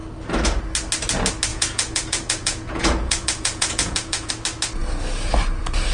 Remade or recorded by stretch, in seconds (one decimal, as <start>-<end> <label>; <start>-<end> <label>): 0.0-1.5 recorded; 1.5-4.3 remade; 4.3-5.9 recorded